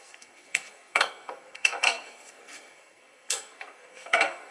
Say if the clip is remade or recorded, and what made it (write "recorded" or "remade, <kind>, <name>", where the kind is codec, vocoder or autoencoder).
remade, codec, SNAC